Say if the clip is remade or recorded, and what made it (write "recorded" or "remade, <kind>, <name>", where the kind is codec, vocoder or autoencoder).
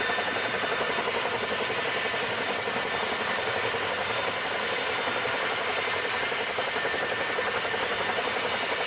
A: recorded